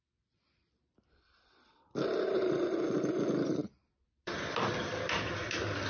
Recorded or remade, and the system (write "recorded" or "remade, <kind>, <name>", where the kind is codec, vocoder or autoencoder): remade, vocoder, BigVGAN v2